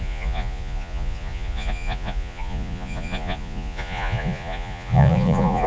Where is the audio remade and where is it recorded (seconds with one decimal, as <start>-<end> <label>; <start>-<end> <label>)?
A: 0.0-5.7 remade